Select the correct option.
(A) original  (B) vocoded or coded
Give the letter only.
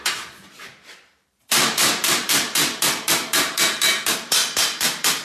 B